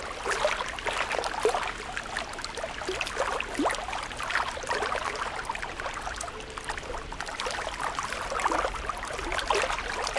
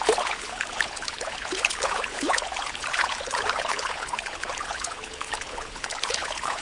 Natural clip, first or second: first